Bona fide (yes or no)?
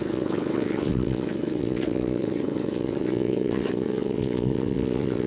no